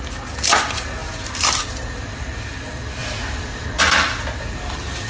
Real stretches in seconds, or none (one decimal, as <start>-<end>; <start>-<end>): 0.0-1.0; 1.6-3.0; 3.8-5.1